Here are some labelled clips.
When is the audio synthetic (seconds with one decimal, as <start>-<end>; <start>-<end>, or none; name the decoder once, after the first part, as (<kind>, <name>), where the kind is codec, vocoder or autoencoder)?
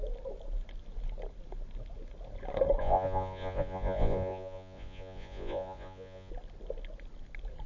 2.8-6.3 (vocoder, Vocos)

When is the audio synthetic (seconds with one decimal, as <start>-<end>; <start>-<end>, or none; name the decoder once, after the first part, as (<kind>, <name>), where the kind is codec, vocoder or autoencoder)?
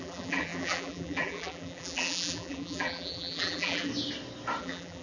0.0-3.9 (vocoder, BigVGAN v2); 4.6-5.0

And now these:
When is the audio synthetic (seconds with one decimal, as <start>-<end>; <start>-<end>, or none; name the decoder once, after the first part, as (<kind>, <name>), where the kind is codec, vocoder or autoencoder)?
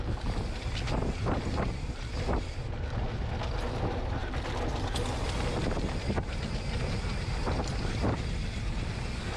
none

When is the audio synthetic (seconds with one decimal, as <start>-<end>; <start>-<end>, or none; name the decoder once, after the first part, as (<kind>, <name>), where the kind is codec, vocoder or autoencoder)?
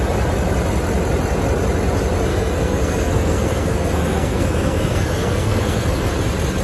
2.3-6.1 (codec, SNAC)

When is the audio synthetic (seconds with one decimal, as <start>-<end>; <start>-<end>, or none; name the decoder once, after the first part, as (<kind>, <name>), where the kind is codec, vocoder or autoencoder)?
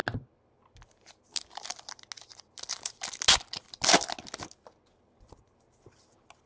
none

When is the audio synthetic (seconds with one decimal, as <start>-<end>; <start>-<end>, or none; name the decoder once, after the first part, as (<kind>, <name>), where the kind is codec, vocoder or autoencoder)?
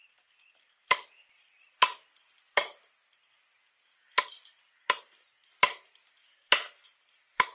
none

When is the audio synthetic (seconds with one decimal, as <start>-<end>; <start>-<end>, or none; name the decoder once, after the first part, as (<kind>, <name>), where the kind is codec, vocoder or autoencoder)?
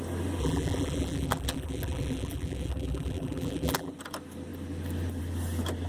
0.4-3.9 (vocoder, BigVGAN v2)